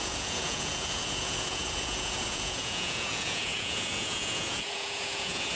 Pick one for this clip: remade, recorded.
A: remade